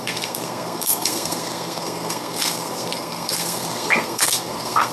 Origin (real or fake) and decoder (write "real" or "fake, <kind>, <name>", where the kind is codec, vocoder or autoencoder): fake, codec, SNAC